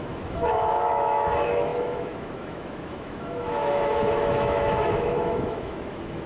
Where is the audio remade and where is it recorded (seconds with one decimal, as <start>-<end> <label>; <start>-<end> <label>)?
0.0-6.3 remade